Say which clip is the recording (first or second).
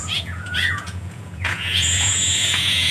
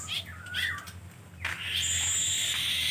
second